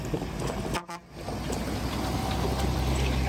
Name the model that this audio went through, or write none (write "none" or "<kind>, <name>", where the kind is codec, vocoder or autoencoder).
none